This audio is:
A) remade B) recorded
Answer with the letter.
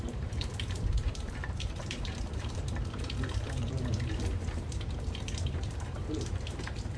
A